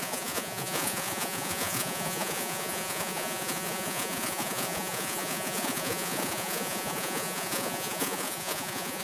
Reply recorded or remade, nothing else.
remade